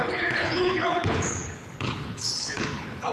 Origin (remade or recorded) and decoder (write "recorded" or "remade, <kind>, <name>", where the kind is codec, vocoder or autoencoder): remade, codec, HILCodec